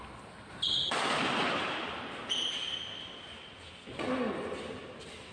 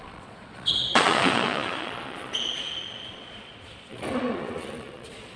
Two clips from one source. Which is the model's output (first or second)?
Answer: second